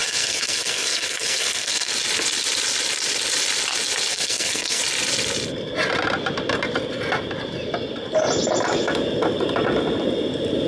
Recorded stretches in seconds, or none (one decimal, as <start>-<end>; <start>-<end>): 1.9-4.1; 4.8-10.7